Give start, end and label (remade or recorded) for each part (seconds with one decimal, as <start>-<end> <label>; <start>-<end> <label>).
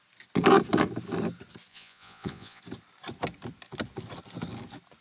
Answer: 0.0-1.7 recorded; 1.7-2.6 remade; 2.6-5.0 recorded